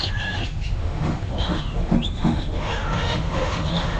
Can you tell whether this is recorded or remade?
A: remade